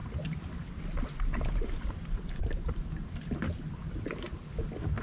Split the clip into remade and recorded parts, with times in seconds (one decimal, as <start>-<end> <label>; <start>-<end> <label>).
0.0-5.0 recorded